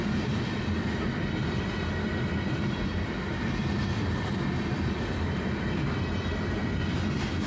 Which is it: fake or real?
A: real